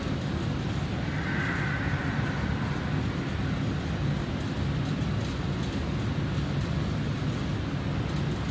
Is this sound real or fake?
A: real